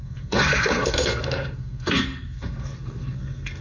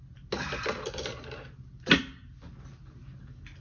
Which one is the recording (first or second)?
second